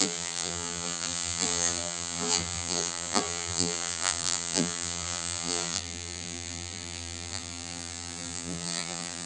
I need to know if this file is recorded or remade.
remade